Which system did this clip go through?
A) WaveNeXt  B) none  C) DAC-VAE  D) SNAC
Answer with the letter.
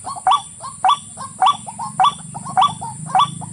B